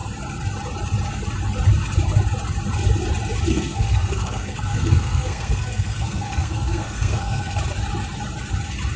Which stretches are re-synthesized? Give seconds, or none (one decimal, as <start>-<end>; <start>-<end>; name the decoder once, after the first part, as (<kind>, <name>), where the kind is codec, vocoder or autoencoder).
3.5-7.6 (codec, SNAC)